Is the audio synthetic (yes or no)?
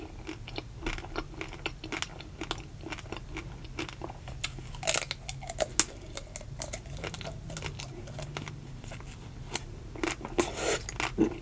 no